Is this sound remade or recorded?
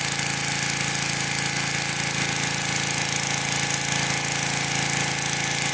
recorded